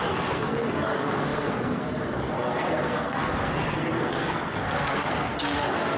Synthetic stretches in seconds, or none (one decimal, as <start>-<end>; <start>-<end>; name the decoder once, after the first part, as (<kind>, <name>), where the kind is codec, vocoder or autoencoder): 0.0-6.0 (codec, SNAC)